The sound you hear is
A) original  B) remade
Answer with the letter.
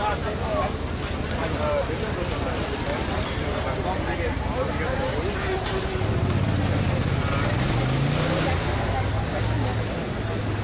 A